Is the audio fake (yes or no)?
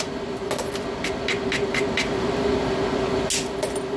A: no